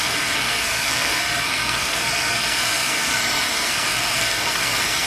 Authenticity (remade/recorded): remade